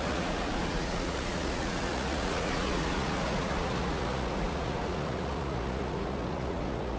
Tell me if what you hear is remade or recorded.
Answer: remade